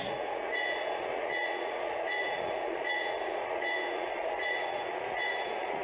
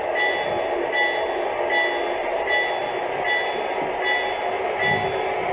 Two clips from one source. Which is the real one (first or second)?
second